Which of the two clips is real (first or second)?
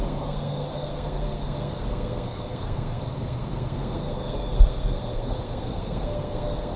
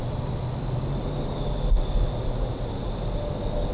second